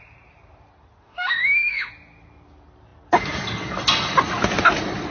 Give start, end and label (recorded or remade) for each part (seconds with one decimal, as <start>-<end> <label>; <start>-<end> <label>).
0.0-1.0 recorded; 1.0-1.9 remade; 1.9-5.1 recorded